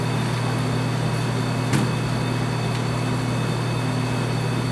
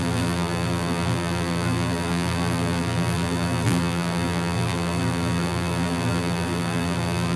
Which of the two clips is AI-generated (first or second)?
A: second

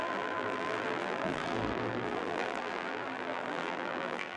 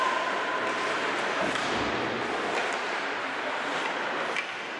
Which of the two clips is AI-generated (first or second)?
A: first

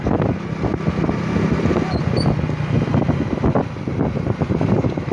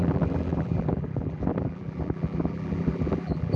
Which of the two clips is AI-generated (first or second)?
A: second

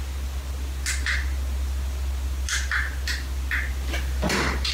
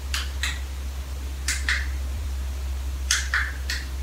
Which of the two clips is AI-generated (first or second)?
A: second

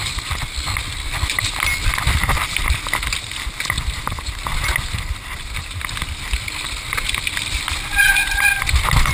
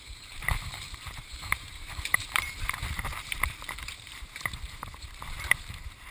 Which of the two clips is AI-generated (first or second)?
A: second